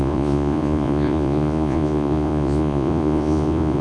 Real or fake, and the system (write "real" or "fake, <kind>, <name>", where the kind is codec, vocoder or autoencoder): fake, vocoder, Vocos